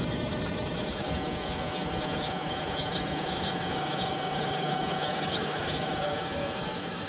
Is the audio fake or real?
fake